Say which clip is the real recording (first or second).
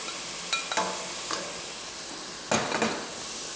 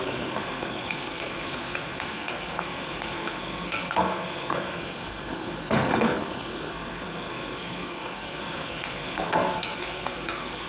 first